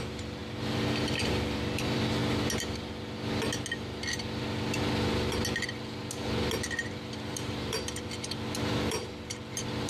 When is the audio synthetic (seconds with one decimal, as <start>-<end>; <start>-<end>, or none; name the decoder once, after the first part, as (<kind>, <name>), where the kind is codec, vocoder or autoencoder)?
0.0-2.2 (vocoder, BigVGAN v2); 6.9-9.9